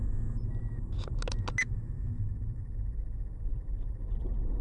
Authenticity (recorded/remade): recorded